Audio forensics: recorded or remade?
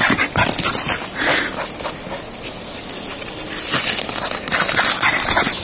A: recorded